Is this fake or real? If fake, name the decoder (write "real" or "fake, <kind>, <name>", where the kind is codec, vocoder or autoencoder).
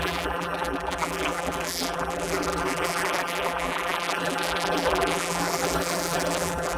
fake, vocoder, BigVGAN v2